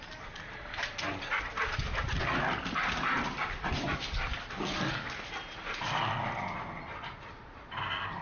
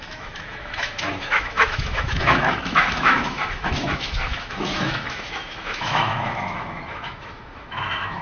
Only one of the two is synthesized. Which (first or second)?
second